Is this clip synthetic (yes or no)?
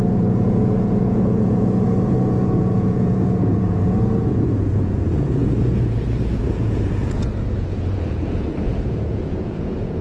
yes